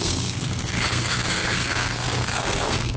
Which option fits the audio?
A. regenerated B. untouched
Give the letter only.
A